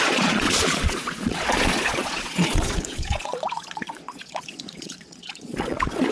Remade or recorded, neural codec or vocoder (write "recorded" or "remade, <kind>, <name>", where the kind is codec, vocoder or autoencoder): remade, vocoder, Vocos